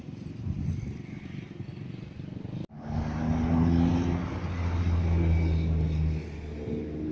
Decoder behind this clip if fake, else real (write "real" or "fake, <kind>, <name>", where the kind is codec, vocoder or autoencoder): real